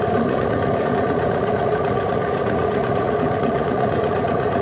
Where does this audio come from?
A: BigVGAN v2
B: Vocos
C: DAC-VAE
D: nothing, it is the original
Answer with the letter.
B